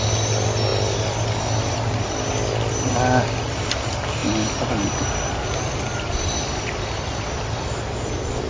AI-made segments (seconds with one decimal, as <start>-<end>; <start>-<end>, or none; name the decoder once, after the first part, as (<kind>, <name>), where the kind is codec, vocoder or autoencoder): none